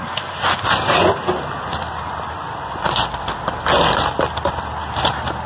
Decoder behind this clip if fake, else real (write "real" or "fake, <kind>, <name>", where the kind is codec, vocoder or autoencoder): real